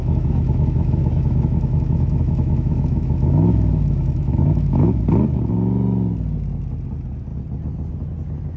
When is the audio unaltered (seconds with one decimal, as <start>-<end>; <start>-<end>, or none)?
5.0-8.6